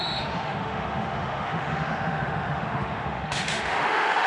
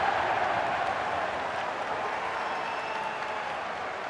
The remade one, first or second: first